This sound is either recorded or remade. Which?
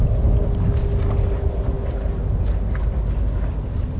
recorded